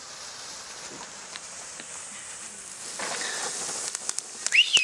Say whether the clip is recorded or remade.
recorded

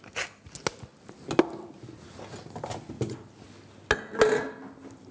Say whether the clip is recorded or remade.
recorded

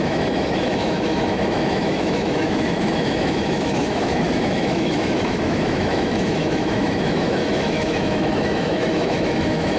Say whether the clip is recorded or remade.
remade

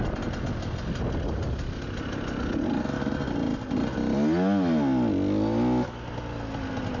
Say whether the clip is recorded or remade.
recorded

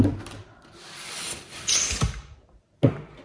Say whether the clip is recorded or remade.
recorded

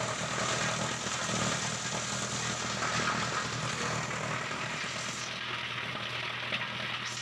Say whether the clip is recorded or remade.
recorded